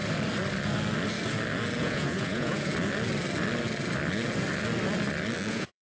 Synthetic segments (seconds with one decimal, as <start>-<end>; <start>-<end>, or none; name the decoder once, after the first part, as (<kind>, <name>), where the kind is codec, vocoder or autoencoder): 1.8-2.7 (vocoder, Vocos); 5.5-5.9